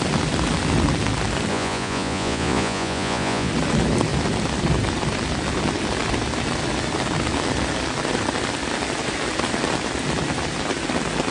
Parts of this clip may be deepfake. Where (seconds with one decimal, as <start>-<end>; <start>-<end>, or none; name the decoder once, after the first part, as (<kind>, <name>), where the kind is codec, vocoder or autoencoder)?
1.5-3.5 (vocoder, Vocos)